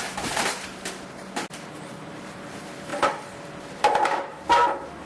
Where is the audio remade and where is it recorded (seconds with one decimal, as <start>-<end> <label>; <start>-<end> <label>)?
0.0-5.1 recorded